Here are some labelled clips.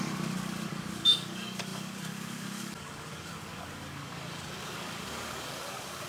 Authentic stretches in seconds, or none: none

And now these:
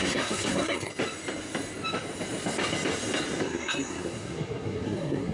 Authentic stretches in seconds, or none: 0.9-3.4

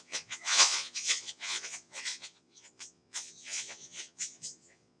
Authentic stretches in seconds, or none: none

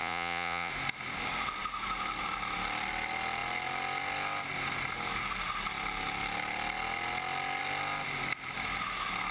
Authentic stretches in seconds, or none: 0.7-9.3

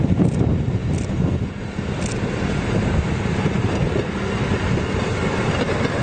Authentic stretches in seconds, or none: 0.0-6.0

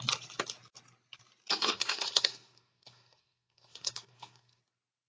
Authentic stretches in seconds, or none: 0.0-1.5; 4.6-5.1

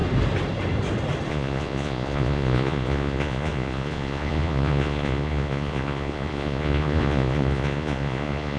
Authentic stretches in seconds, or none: 0.0-1.3

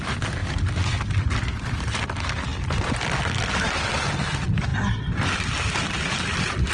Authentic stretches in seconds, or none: 0.0-6.7